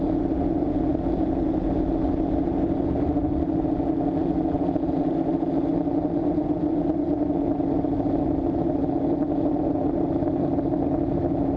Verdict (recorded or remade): recorded